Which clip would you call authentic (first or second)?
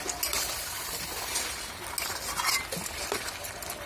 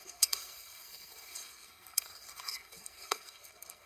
first